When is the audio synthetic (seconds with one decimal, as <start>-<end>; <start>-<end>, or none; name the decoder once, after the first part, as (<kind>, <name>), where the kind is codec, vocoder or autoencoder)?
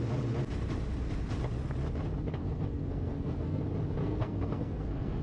2.4-3.6 (codec, SNAC); 4.0-5.2